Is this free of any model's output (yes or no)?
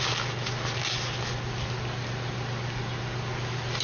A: yes